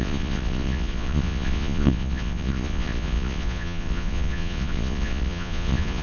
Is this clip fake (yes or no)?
yes